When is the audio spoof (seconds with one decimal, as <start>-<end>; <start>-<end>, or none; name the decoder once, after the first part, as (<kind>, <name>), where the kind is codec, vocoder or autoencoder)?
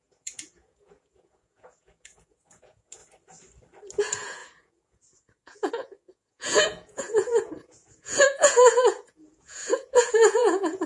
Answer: 0.0-3.0 (vocoder, Vocos); 4.0-10.9